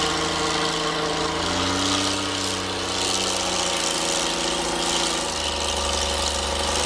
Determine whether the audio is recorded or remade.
recorded